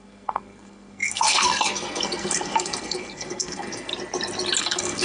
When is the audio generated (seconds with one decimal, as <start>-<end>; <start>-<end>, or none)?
0.0-3.9; 4.6-5.0